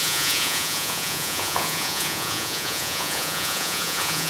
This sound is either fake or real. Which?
fake